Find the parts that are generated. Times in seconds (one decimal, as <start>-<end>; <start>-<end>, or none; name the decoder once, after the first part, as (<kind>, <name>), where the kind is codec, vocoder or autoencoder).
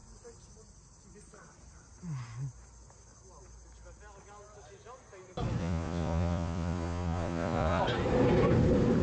5.6-7.8 (vocoder, Vocos)